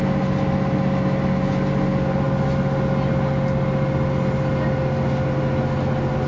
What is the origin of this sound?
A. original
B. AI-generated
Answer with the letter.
A